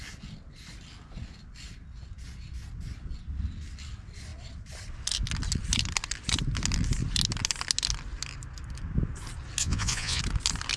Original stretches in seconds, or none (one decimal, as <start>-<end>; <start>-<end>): 0.0-9.6; 10.2-10.8